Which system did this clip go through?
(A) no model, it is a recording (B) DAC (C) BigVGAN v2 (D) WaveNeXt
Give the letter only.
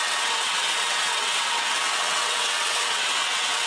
D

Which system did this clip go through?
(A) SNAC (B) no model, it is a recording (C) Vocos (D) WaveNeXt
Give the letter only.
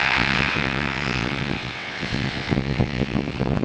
D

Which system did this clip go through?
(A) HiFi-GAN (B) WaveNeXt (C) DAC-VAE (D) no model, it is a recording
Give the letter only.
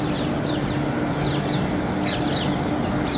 D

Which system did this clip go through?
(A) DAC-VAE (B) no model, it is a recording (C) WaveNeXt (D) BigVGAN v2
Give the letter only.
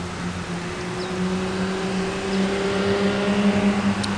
B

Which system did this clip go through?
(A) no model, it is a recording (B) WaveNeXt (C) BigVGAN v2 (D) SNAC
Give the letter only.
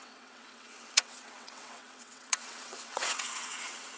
B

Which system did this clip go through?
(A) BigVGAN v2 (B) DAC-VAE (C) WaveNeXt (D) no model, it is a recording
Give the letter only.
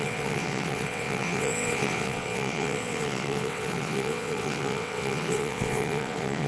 C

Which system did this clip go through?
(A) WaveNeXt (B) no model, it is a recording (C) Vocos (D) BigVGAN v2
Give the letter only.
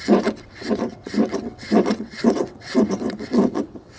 A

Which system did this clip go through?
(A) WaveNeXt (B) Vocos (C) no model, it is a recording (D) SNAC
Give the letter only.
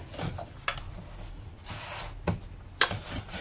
C